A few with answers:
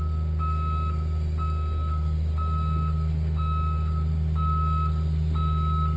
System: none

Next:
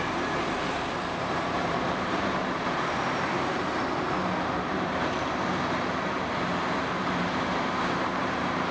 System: vocoder, BigVGAN v2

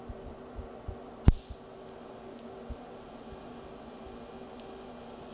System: none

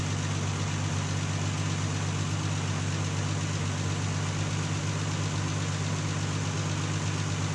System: none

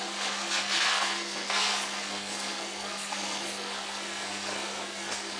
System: codec, SNAC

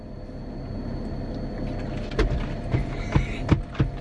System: none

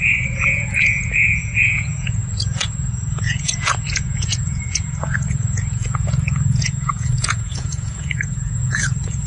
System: vocoder, Vocos